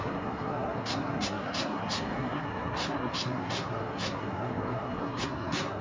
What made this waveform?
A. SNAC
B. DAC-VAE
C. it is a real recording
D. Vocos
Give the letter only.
A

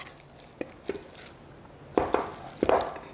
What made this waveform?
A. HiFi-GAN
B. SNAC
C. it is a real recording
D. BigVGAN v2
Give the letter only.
C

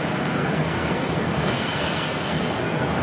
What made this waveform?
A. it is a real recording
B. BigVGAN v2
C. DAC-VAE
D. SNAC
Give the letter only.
D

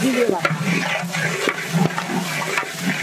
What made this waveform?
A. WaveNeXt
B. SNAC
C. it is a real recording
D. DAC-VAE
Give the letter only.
C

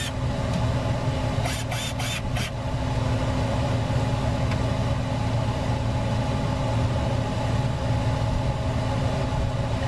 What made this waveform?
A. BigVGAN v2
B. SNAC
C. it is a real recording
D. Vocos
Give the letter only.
C